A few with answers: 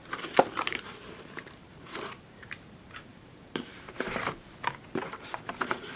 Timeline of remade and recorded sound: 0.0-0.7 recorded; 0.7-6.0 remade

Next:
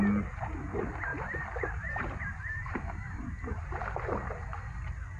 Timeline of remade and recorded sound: 0.0-1.1 recorded; 1.1-3.8 remade; 3.8-5.2 recorded

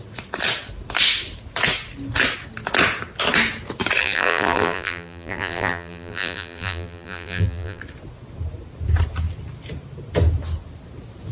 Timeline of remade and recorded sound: 0.0-4.0 recorded; 4.0-7.8 remade; 7.8-11.3 recorded